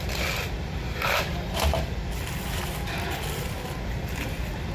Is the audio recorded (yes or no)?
yes